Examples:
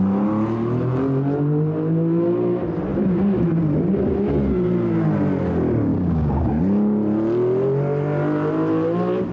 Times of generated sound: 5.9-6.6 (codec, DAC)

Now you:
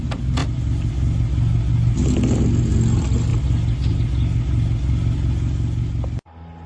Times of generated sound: none

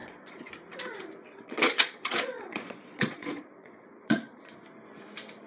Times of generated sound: 0.0-0.5 (vocoder, Vocos); 1.2-4.5

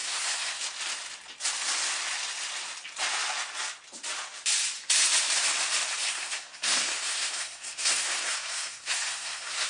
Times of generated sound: 0.0-0.6 (codec, SNAC); 6.0-9.7

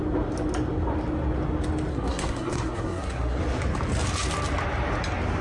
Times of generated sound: 1.9-3.4 (codec, SNAC)

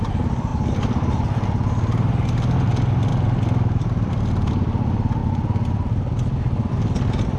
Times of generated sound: 3.1-4.7 (vocoder, BigVGAN v2)

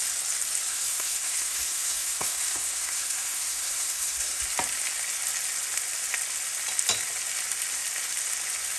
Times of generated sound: 0.7-4.4 (codec, SNAC)

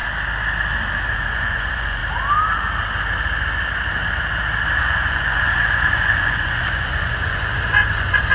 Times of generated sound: 1.1-2.0 (vocoder, Vocos); 4.8-8.3